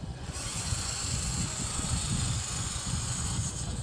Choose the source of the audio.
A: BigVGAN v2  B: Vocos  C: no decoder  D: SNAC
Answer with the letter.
B